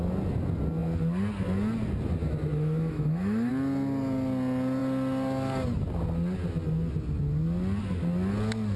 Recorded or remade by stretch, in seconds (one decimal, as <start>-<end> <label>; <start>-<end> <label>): 0.0-2.5 recorded; 2.5-3.5 remade; 3.5-8.8 recorded

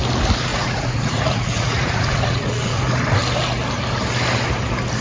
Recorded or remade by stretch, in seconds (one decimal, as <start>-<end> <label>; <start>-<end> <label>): 0.0-0.5 recorded; 0.5-2.8 remade; 2.8-5.0 recorded

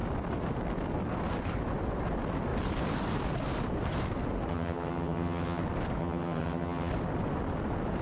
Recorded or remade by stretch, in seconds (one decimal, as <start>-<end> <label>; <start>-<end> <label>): 0.0-4.5 recorded; 4.5-5.6 remade; 5.6-6.0 recorded; 6.0-6.9 remade; 6.9-8.0 recorded